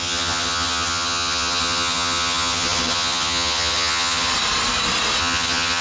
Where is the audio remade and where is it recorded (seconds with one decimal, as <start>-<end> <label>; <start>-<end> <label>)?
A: 0.0-4.3 remade; 4.3-5.2 recorded; 5.2-5.8 remade

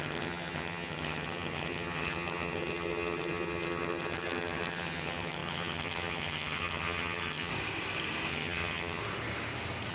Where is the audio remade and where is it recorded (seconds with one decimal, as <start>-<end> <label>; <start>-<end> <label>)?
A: 0.0-7.5 remade; 7.5-8.3 recorded; 8.3-9.0 remade; 9.0-9.9 recorded

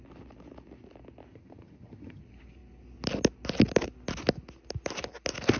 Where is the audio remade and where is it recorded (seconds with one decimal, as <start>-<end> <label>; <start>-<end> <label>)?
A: 0.0-1.3 recorded; 1.3-2.2 remade; 2.2-5.6 recorded

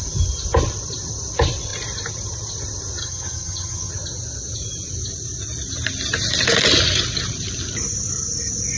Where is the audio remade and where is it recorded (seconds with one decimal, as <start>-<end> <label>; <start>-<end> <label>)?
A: 0.0-3.0 recorded; 3.0-3.9 remade; 3.9-8.8 recorded

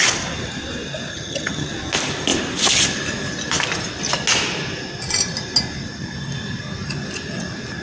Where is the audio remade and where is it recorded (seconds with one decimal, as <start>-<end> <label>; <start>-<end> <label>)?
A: 0.0-1.1 recorded; 1.1-1.7 remade; 1.7-7.8 recorded